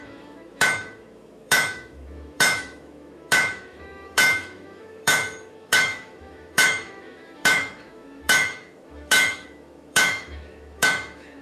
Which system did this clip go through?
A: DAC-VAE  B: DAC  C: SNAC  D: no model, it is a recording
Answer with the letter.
A